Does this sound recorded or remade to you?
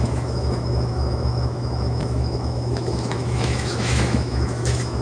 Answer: remade